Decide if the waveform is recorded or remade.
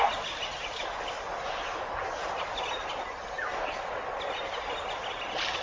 recorded